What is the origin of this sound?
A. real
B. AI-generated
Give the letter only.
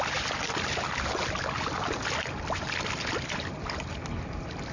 A